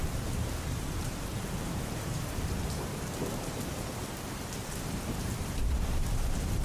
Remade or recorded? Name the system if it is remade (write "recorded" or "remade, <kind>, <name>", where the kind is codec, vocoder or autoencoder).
remade, vocoder, BigVGAN v2